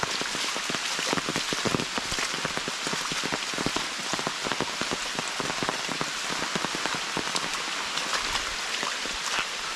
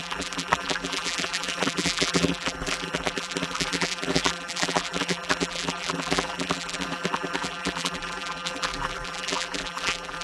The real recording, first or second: first